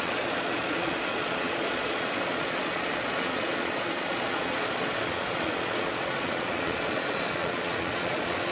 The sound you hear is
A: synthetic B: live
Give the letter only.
A